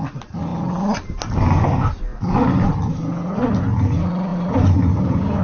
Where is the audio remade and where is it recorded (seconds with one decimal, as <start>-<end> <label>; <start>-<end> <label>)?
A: 0.0-4.3 recorded; 4.3-5.4 remade